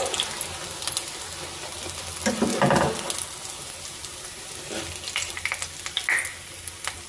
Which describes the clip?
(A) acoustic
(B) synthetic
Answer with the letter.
A